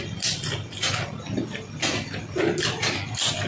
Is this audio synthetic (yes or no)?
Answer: no